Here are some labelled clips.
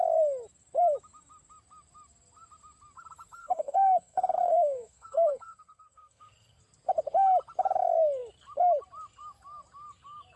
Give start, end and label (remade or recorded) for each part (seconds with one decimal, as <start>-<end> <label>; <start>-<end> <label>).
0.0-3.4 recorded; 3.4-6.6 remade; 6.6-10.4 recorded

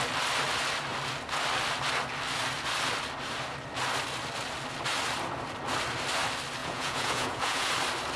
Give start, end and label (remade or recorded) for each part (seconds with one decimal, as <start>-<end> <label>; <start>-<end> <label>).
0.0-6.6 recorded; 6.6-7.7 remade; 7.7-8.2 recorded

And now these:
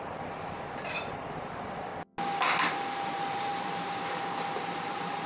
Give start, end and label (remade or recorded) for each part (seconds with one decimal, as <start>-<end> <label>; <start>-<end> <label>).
0.0-1.9 remade; 1.9-2.7 recorded; 2.7-5.3 remade